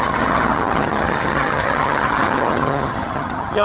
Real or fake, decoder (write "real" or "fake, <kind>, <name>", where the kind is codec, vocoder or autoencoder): fake, vocoder, HiFi-GAN